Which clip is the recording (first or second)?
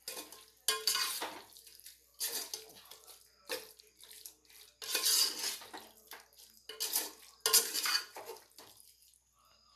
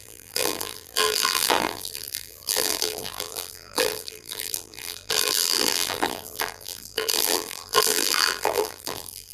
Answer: first